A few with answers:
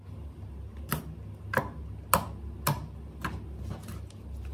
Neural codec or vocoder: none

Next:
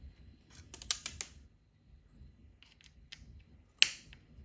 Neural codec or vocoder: none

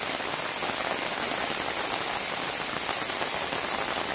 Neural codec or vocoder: none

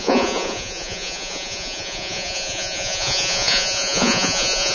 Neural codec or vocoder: vocoder, Vocos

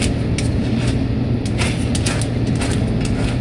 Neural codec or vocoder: none